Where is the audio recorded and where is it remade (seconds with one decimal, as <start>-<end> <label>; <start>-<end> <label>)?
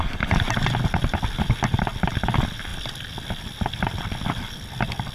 0.0-5.1 recorded